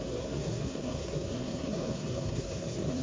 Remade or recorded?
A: remade